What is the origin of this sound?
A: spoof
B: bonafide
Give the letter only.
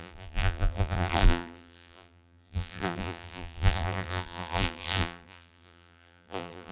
A